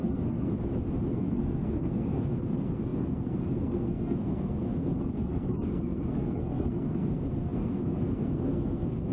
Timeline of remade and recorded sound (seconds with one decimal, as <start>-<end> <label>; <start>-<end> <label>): 0.0-0.5 remade; 0.5-1.1 recorded; 1.1-9.1 remade